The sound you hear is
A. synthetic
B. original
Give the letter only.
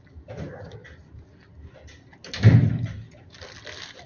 B